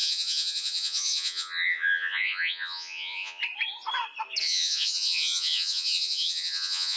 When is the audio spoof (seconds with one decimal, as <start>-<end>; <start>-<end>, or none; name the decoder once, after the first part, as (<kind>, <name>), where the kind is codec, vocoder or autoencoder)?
0.0-3.4 (vocoder, Vocos); 4.4-7.0